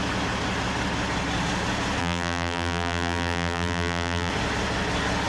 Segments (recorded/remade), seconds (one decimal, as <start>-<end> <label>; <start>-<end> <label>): 0.0-2.0 recorded; 2.0-4.3 remade; 4.3-5.3 recorded